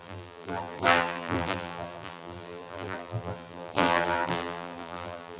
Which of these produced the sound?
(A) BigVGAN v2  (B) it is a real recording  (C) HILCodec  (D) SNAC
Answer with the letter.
A